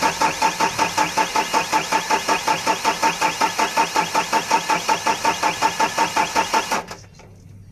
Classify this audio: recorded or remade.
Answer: recorded